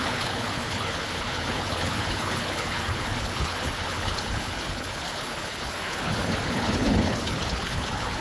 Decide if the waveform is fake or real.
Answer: fake